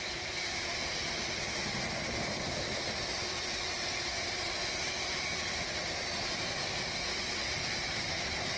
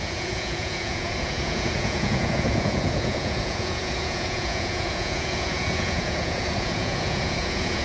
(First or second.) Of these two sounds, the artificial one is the second